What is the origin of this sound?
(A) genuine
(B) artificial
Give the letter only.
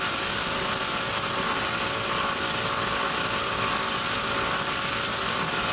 A